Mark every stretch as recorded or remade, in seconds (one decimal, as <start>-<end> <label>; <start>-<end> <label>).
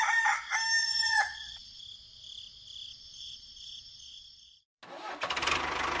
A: 0.0-0.8 recorded; 0.8-1.8 remade; 1.8-2.9 recorded; 2.9-4.6 remade; 4.6-6.0 recorded